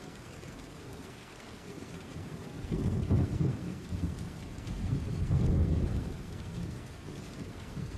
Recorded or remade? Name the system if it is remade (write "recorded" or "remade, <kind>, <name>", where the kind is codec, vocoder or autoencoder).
remade, codec, SNAC